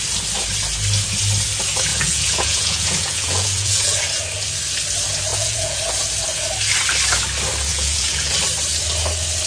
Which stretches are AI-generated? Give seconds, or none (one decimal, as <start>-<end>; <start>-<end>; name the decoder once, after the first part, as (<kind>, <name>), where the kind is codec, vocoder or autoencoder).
1.9-4.0 (vocoder, Vocos); 5.3-5.8; 7.7-8.3

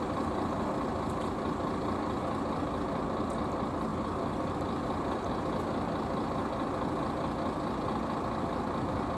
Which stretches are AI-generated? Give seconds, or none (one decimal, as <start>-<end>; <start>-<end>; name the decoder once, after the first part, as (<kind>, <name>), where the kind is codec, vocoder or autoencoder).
none

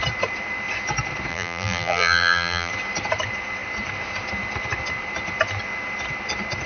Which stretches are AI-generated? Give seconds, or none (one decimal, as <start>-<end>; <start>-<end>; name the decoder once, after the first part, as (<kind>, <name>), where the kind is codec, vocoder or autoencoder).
1.3-2.7 (vocoder, BigVGAN v2)